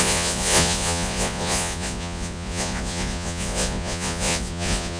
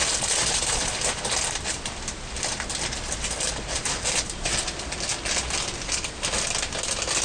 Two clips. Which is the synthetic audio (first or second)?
first